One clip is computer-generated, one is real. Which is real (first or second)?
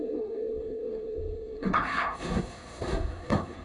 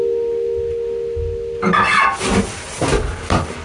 second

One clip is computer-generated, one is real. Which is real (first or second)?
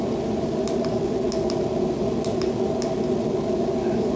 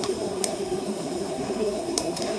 first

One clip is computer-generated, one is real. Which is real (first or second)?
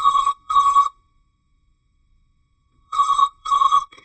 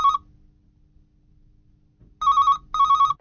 second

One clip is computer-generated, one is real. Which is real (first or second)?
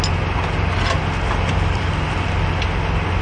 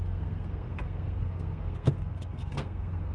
first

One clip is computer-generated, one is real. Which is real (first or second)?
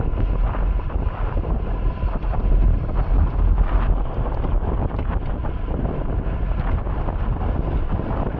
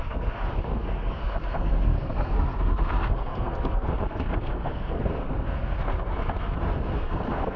first